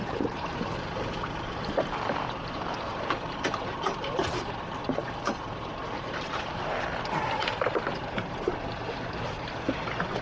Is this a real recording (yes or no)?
no